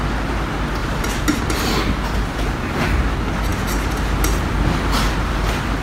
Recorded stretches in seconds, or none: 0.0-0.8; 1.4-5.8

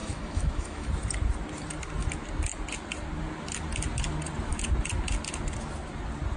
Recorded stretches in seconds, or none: 0.9-6.4

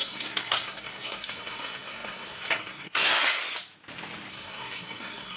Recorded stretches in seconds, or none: 3.4-4.3

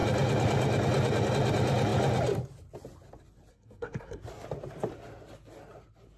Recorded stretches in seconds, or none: 0.0-3.5; 4.2-6.2

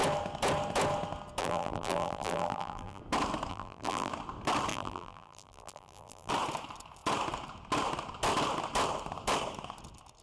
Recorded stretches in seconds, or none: 0.0-1.4; 3.0-3.5; 4.1-4.7; 6.3-10.2

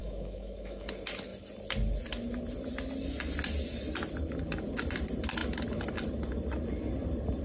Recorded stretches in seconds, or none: 0.9-7.4